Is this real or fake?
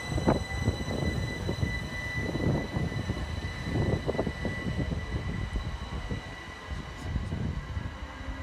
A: real